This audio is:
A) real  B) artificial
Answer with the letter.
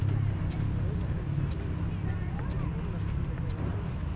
A